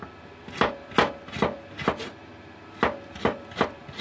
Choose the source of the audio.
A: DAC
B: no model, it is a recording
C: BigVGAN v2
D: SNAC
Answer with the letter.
B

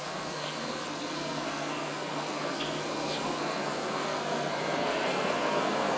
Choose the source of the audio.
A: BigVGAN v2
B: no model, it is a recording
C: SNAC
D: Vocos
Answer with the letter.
C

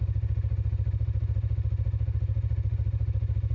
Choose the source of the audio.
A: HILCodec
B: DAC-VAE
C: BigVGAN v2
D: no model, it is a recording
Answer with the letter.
D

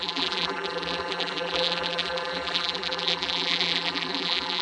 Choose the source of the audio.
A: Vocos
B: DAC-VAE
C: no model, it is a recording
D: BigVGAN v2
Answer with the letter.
D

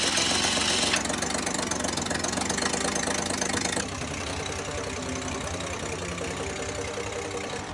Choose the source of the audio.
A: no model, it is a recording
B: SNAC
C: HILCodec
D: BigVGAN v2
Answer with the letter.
A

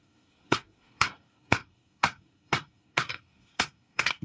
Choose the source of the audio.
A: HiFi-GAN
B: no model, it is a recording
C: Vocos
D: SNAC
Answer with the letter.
D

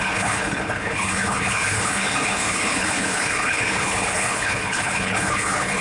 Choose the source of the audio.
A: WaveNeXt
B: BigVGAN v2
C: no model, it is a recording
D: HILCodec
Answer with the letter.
D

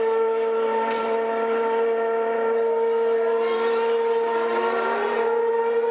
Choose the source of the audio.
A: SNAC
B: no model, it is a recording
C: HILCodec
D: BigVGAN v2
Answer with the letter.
D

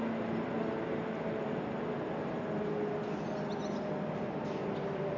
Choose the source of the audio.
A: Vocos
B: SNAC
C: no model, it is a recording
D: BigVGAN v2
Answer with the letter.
C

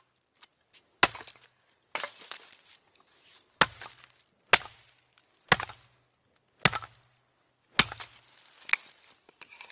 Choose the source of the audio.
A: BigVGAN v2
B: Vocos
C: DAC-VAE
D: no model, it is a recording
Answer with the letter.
D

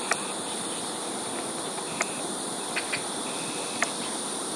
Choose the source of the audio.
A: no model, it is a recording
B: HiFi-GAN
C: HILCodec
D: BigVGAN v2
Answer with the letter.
D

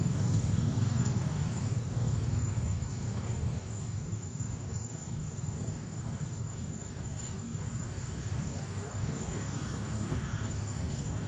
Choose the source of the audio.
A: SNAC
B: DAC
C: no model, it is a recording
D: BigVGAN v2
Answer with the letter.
B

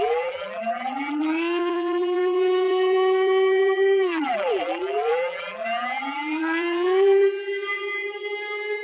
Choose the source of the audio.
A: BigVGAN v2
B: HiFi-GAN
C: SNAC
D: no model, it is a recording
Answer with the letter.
A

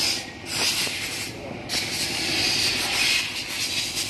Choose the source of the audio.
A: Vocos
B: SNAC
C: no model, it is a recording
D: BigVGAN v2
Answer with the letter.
C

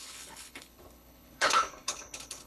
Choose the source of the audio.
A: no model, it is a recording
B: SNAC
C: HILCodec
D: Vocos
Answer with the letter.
C